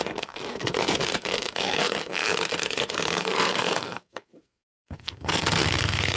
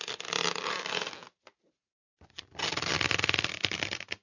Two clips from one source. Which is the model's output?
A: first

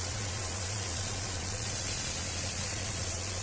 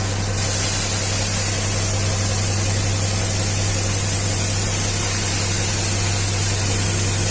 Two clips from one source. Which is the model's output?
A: first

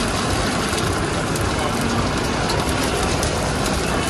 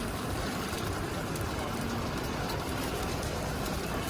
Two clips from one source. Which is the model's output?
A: second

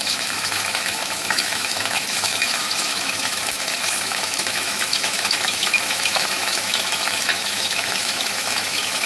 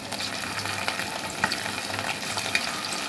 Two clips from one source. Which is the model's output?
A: first